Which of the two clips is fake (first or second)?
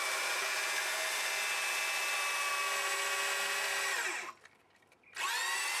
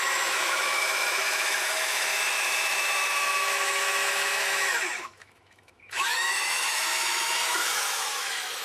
second